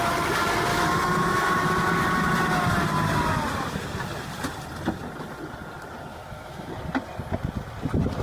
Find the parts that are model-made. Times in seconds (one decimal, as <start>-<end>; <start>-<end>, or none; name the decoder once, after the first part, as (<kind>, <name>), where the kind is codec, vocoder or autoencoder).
0.7-1.5 (autoencoder, DAC-VAE); 6.1-6.7